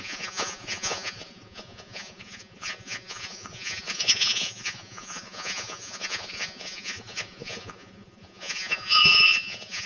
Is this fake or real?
fake